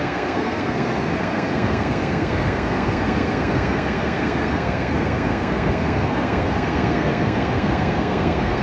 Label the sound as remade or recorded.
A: remade